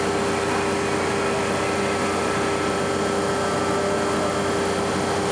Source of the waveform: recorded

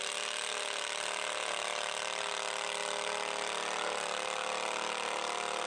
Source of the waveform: recorded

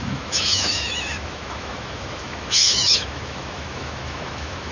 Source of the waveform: remade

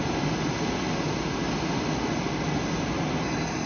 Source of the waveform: recorded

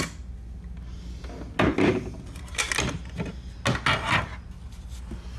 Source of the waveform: recorded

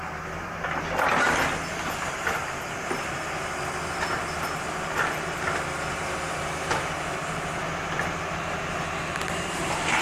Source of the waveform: recorded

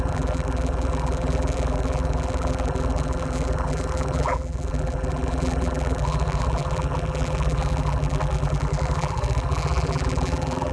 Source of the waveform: remade